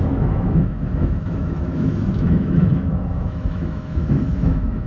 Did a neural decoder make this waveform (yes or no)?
yes